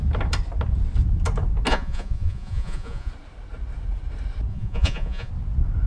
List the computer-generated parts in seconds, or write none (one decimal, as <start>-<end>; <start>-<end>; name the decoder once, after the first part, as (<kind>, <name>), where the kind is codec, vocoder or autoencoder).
1.7-3.1 (vocoder, Vocos); 4.5-5.3